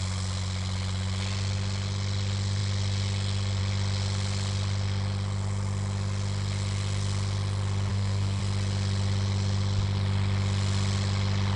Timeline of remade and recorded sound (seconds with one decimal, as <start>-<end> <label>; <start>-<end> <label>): 0.0-7.9 recorded; 7.9-8.4 remade; 8.4-11.6 recorded